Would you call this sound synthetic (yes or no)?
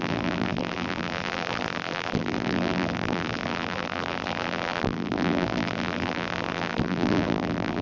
yes